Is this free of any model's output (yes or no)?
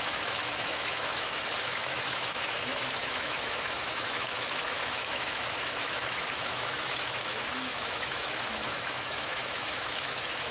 no